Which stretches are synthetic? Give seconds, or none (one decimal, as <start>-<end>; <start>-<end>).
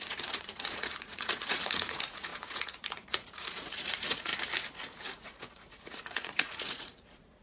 0.0-4.3; 5.0-7.4